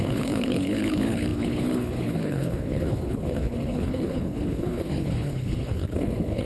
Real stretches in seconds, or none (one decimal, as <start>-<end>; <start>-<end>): none